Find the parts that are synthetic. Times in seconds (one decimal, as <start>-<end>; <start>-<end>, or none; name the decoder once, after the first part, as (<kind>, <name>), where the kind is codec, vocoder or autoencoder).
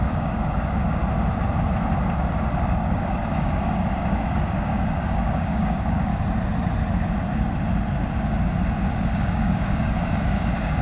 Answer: 0.0-1.0 (codec, DAC); 2.6-6.1; 9.0-10.8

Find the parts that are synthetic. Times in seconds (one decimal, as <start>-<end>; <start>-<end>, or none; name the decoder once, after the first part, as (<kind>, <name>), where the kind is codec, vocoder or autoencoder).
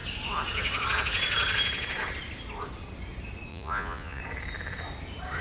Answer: 3.5-4.2 (vocoder, Vocos)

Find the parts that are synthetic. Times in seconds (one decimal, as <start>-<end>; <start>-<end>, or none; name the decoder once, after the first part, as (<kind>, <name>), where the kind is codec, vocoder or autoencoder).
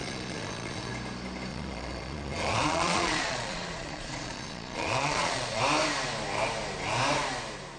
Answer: 0.0-0.9 (vocoder, Vocos); 1.5-5.6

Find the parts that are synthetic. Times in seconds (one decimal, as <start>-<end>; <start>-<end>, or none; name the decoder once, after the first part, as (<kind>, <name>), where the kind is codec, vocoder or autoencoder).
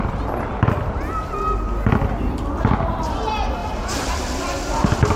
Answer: 3.6-4.1 (vocoder, BigVGAN v2)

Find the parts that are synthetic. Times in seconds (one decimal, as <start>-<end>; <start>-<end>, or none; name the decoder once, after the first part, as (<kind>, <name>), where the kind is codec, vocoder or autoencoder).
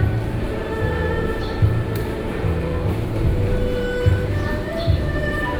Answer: 0.0-5.6 (vocoder, BigVGAN v2)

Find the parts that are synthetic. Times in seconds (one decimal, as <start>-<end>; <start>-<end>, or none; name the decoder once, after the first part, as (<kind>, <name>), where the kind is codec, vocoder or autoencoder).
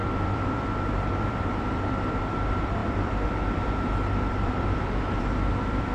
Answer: 0.0-5.9 (vocoder, BigVGAN v2)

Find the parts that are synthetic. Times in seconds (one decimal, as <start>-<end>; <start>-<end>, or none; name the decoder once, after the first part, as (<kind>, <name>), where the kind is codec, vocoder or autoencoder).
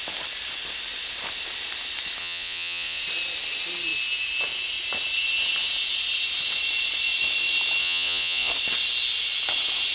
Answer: 2.2-3.0 (vocoder, Vocos); 7.8-8.5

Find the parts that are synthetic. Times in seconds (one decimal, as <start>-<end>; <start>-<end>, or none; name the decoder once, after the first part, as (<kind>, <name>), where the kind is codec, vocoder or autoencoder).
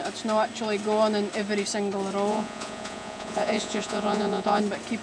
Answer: 2.3-4.6 (vocoder, Vocos)